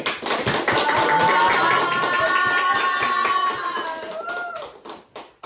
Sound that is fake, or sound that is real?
real